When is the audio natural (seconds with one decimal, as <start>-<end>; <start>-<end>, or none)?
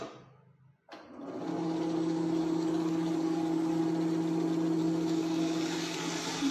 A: 0.0-1.5; 3.8-4.8